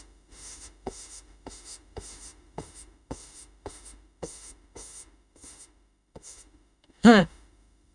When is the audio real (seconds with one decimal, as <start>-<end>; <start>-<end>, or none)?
none